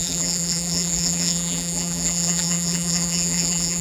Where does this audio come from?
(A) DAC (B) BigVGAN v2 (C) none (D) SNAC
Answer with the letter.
B